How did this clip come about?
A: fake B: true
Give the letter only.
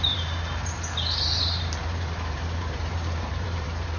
A